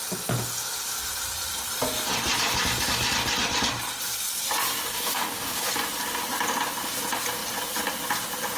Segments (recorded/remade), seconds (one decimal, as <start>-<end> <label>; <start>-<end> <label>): 0.0-4.9 recorded; 4.9-5.7 remade; 5.7-8.6 recorded